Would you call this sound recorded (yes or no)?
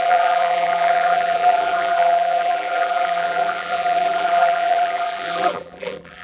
no